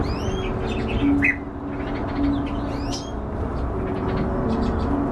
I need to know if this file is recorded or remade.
recorded